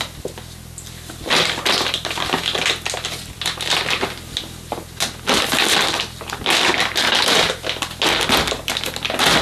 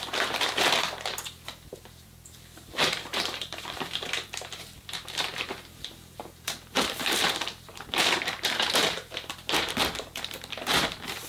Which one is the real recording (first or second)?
first